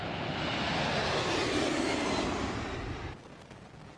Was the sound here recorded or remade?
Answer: recorded